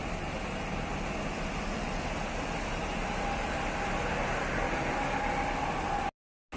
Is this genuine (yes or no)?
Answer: yes